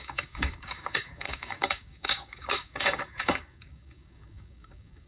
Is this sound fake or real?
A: fake